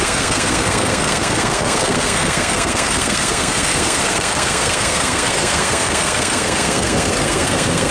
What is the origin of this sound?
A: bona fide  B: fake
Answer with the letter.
B